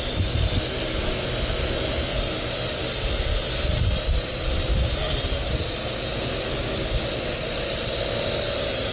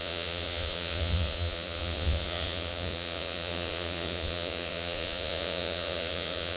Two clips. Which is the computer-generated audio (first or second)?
second